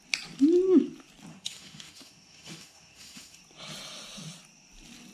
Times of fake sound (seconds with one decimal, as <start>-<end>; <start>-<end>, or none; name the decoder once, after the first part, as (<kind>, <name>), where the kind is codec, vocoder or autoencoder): 1.3-3.4 (autoencoder, DAC-VAE)